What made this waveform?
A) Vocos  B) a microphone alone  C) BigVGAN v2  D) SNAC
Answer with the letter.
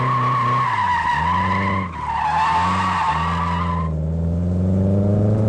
B